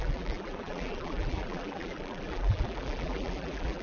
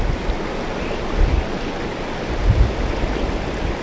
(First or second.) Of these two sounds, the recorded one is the second